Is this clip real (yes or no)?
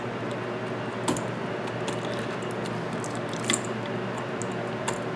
yes